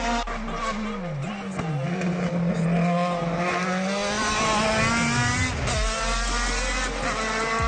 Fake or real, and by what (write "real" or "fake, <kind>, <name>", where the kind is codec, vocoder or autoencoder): real